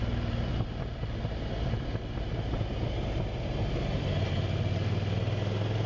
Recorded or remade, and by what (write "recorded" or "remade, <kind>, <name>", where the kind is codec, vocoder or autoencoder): recorded